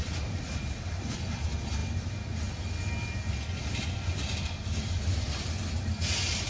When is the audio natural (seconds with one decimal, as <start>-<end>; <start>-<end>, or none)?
0.0-6.5